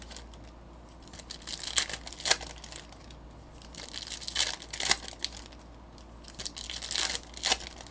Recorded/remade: recorded